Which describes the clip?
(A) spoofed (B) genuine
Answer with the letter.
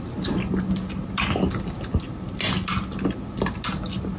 B